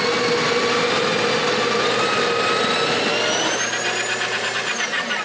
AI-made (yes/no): no